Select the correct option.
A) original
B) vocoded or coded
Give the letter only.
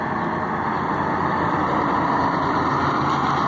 A